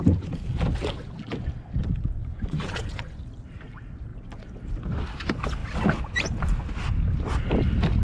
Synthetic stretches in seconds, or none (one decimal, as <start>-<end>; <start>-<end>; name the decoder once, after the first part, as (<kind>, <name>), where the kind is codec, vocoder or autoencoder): 2.2-3.2 (vocoder, Vocos)